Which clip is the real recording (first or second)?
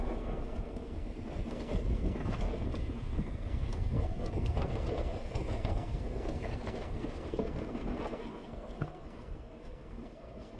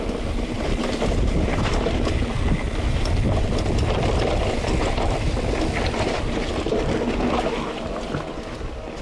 second